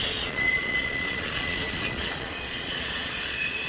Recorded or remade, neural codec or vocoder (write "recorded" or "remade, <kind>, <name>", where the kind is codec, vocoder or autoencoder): remade, vocoder, Vocos